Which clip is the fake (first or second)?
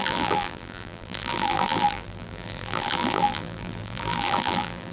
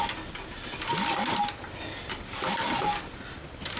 first